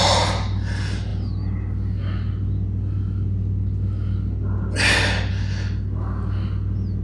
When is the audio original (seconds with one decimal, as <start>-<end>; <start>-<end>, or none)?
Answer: 0.0-7.0